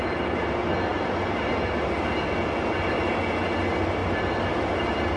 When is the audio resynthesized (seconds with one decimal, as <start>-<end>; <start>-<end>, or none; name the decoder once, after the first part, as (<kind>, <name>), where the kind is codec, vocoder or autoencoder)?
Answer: none